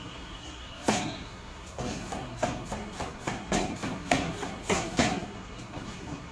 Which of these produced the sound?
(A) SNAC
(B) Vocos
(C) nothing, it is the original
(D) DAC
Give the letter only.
A